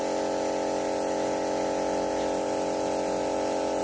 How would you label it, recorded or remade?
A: recorded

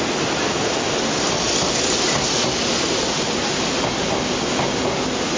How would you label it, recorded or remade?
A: recorded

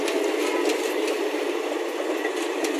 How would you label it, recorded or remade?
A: recorded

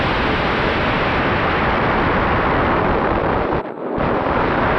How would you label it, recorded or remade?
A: recorded